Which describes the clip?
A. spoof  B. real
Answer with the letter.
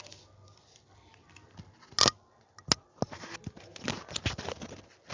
B